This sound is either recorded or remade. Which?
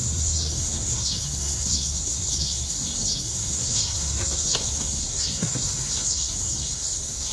remade